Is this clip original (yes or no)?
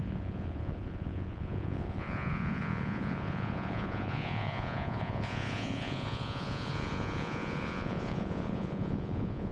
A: no